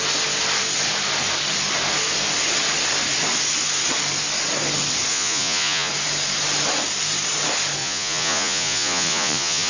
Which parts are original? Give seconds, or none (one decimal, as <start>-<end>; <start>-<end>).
0.0-5.1; 5.9-7.8